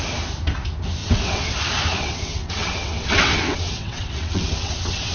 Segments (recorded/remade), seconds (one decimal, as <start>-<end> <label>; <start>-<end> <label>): 0.0-1.0 recorded; 1.0-1.5 remade; 1.5-2.0 recorded; 2.0-5.1 remade